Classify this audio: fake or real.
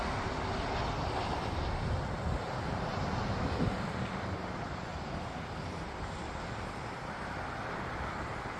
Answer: real